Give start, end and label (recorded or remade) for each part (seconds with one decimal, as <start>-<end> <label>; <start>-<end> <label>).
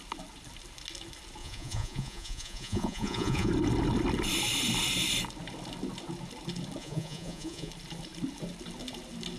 0.0-1.4 recorded; 1.4-3.5 remade; 3.5-6.8 recorded; 6.8-7.7 remade; 7.7-9.4 recorded